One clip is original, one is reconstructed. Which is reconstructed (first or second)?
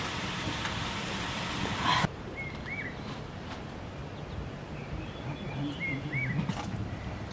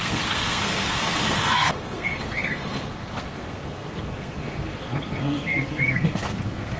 second